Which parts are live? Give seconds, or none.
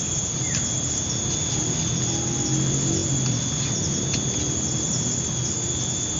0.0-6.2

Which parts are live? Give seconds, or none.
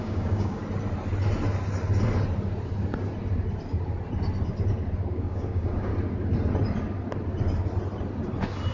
0.6-5.1; 5.9-8.7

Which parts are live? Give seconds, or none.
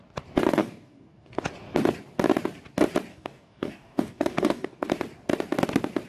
0.0-0.6; 1.4-3.1; 4.9-6.1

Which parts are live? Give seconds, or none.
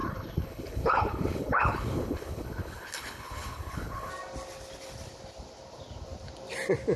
4.1-7.0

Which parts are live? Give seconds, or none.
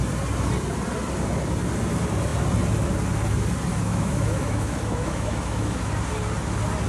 0.0-3.7; 5.9-6.9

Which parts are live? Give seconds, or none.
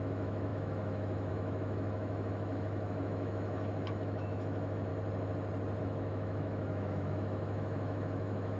4.9-5.8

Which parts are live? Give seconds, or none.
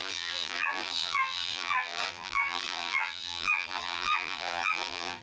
none